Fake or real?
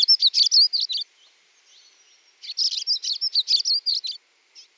real